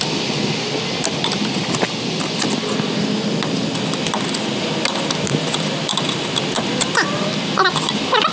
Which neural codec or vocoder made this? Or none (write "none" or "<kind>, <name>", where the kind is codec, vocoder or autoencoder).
none